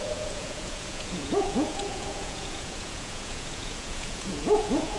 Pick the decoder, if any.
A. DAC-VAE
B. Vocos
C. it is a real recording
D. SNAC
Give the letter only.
B